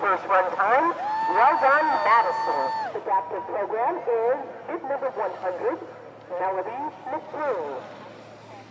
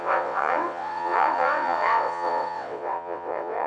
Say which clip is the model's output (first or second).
second